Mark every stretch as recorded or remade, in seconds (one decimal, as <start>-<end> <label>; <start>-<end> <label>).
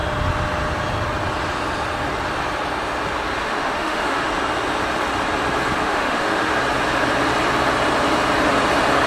0.0-3.4 recorded; 3.4-4.3 remade; 4.3-5.8 recorded; 5.8-6.5 remade; 6.5-9.1 recorded